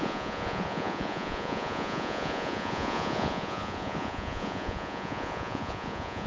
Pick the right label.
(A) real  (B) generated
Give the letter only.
B